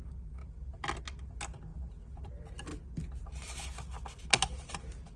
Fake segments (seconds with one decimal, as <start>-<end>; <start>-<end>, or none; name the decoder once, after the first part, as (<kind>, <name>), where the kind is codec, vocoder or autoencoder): 0.4-1.0 (vocoder, BigVGAN v2); 1.7-2.3